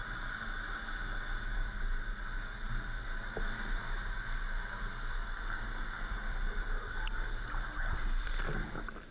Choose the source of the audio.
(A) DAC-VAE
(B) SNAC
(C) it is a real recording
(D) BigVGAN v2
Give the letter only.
C